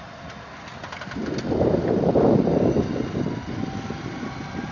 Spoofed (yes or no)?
no